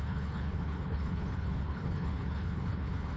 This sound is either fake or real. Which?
fake